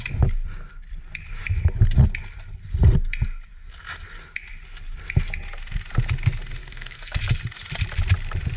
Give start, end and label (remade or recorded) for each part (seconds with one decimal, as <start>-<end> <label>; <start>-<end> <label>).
0.0-6.6 recorded; 6.6-7.2 remade; 7.2-8.6 recorded

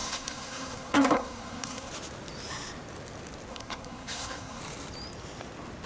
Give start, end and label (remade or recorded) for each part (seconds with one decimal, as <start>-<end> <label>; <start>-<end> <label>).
0.0-1.9 remade; 1.9-3.5 recorded; 3.5-4.6 remade; 4.6-5.9 recorded

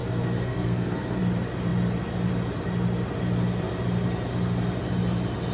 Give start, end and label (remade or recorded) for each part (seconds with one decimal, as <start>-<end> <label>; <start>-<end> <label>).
0.0-1.2 remade; 1.2-5.5 recorded

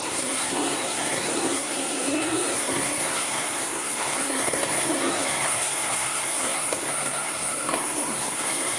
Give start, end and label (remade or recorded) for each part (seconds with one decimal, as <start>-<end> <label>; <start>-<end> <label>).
0.0-8.8 remade

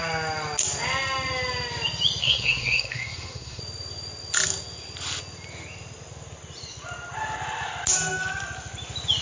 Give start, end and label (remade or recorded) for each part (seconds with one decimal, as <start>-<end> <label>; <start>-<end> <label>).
0.0-2.2 recorded; 2.2-3.6 remade; 3.6-9.2 recorded

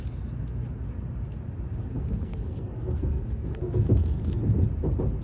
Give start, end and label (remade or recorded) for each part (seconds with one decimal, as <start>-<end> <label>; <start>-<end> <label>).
0.0-1.8 recorded; 1.8-4.4 remade; 4.4-5.2 recorded

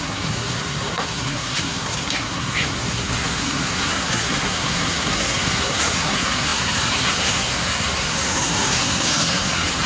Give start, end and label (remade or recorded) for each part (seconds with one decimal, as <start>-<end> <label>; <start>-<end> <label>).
0.0-9.9 remade

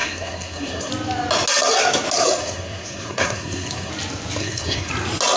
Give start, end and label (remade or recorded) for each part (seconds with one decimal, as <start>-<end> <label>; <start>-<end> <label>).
0.0-0.9 remade; 0.9-2.4 recorded; 2.4-3.9 remade; 3.9-4.4 recorded; 4.4-4.9 remade; 4.9-5.4 recorded